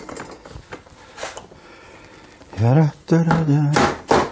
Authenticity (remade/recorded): recorded